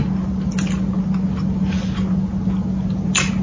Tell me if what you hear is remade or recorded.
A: recorded